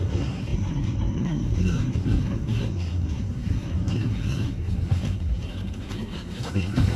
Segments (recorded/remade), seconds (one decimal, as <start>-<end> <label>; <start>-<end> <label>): 0.0-7.0 remade